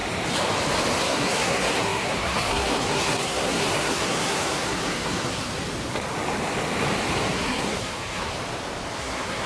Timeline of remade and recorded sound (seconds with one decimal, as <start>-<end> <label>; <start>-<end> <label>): 0.0-1.0 recorded; 1.0-5.5 remade; 5.5-7.3 recorded; 7.3-8.3 remade; 8.3-9.0 recorded; 9.0-9.5 remade